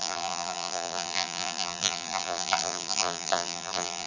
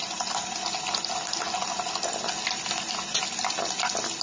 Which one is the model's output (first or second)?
first